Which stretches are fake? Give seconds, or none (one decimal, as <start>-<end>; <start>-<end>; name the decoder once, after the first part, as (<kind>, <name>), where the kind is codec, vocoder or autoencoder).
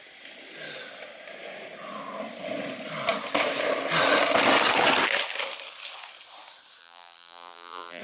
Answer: 6.8-8.0 (vocoder, BigVGAN v2)